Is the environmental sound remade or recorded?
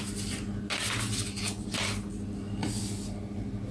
recorded